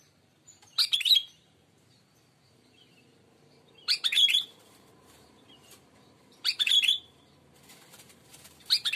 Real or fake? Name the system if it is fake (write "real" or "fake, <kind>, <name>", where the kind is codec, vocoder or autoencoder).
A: fake, vocoder, BigVGAN v2